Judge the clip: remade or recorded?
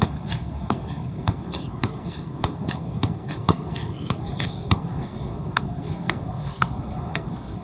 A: remade